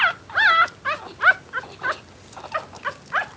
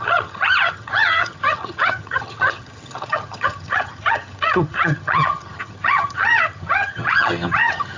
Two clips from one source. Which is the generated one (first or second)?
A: second